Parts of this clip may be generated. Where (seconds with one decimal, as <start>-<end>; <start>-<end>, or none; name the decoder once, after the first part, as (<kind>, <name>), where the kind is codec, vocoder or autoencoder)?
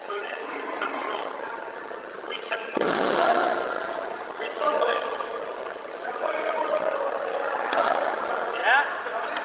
0.0-8.6 (vocoder, HiFi-GAN)